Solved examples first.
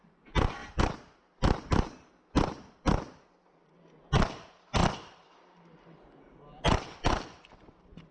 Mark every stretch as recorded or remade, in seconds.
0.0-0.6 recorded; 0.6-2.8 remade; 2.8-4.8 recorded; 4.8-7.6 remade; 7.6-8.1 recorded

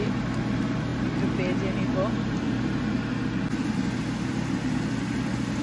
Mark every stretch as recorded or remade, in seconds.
0.0-5.6 recorded